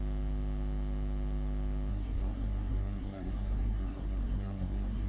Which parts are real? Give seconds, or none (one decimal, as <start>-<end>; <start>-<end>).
0.0-1.9